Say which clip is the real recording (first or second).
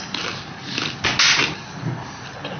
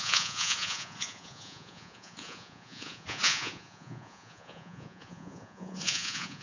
first